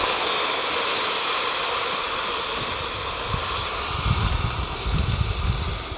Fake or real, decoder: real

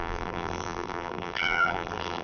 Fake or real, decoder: fake, vocoder, BigVGAN v2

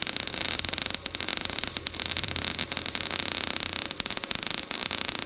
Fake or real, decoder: fake, vocoder, BigVGAN v2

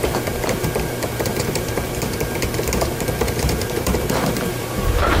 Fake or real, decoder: fake, vocoder, BigVGAN v2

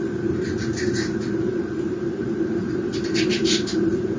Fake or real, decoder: real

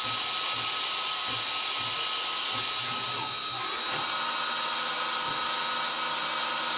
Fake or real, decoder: real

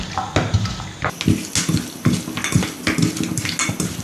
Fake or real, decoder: real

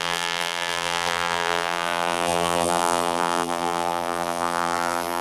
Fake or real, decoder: fake, vocoder, BigVGAN v2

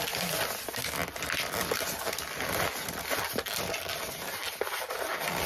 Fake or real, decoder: real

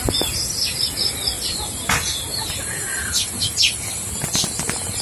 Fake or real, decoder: real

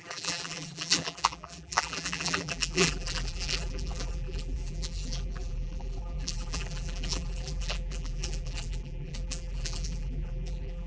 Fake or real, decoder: fake, vocoder, BigVGAN v2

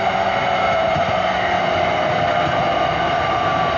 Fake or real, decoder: real